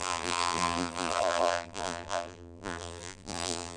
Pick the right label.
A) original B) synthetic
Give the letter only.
B